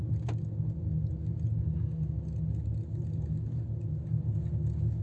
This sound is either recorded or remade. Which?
recorded